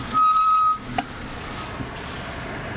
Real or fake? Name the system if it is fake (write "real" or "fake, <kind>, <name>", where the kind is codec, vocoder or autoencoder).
real